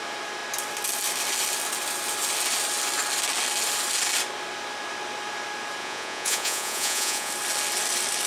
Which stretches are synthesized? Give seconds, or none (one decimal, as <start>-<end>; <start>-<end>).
5.8-7.3